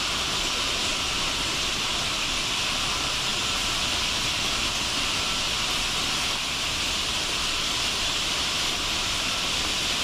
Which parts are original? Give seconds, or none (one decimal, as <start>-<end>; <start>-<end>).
0.9-1.9; 3.3-7.8